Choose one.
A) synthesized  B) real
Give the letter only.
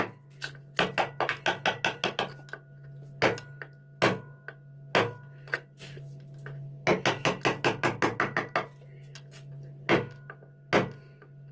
B